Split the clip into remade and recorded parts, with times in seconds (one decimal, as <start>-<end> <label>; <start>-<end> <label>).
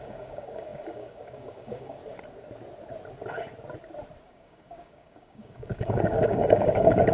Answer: 0.0-2.0 remade; 2.0-4.3 recorded; 4.3-7.1 remade